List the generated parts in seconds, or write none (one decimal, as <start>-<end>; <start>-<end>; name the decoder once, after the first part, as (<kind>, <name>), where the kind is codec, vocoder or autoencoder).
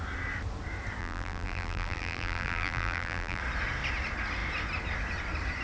1.0-3.4 (vocoder, BigVGAN v2)